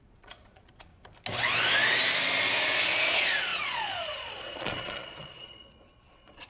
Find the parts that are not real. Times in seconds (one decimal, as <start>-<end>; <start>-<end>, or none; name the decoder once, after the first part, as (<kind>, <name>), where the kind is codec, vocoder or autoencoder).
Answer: 0.0-0.9 (vocoder, Vocos); 3.0-6.5